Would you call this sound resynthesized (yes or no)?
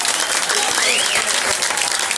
no